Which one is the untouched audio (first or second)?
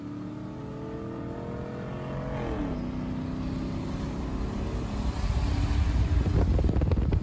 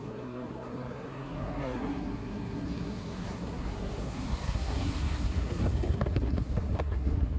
first